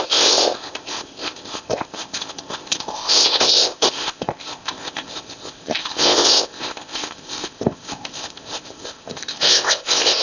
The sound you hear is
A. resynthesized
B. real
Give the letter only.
A